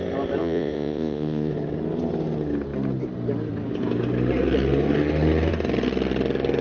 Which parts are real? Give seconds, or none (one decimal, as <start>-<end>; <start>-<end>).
0.0-0.4; 1.5-6.6